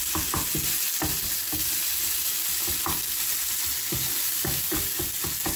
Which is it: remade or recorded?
recorded